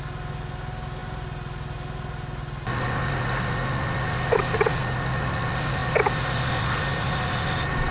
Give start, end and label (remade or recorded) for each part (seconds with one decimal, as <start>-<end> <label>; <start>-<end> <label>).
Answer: 0.0-7.9 recorded